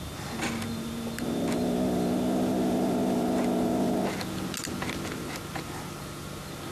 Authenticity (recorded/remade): recorded